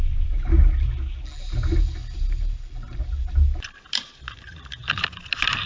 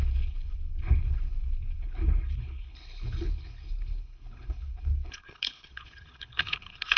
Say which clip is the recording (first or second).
first